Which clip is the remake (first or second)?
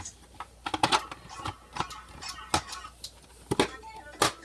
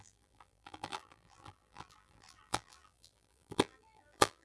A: second